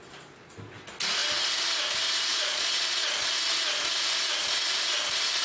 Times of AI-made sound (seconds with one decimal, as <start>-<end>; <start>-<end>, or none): 2.3-3.3